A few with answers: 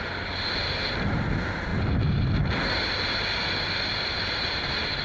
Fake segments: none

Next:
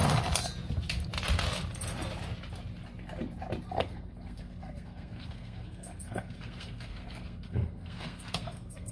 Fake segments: 3.7-8.9 (codec, SNAC)

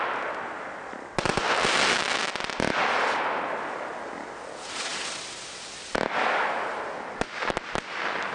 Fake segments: none

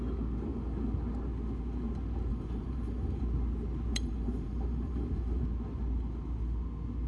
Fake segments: 2.3-3.2 (vocoder, BigVGAN v2); 3.9-5.4

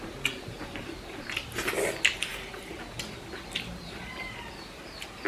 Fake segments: none

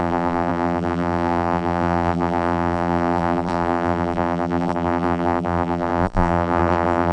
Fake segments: 0.0-7.1 (vocoder, BigVGAN v2)

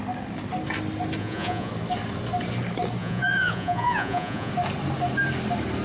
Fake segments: 1.2-1.7 (vocoder, Vocos); 3.0-4.5

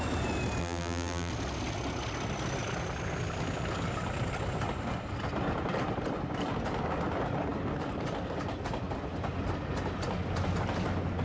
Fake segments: 0.6-1.3 (vocoder, BigVGAN v2)